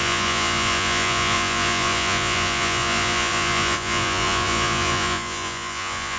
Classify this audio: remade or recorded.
remade